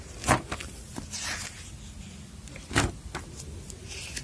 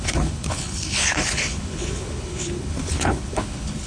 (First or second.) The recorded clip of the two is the first